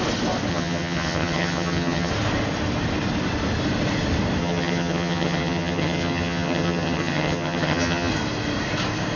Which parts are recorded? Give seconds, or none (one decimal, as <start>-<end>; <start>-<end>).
0.0-0.5; 2.1-4.4; 8.1-9.2